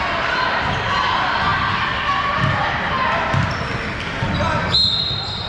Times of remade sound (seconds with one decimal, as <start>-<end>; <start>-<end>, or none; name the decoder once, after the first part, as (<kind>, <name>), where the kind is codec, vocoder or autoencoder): none